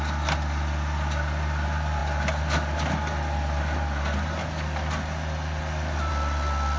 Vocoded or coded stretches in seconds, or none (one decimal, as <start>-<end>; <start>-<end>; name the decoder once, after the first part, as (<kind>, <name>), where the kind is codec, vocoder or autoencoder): none